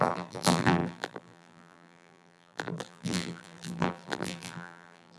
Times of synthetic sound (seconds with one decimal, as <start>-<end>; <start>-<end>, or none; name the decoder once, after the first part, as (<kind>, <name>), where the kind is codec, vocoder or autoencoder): 0.0-5.2 (vocoder, BigVGAN v2)